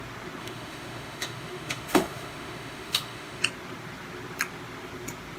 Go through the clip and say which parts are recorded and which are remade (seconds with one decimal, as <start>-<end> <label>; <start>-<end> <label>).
0.0-0.4 recorded; 0.4-3.4 remade; 3.4-5.4 recorded